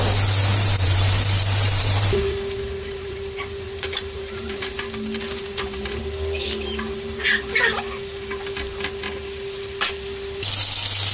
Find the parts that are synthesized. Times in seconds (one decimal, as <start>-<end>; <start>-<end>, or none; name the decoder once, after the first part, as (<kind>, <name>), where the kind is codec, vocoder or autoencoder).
0.5-4.7 (vocoder, BigVGAN v2); 5.5-6.0